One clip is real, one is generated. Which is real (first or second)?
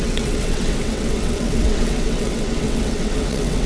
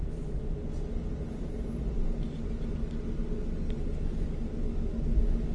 second